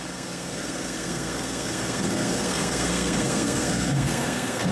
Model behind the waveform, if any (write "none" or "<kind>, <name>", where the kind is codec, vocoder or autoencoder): codec, SNAC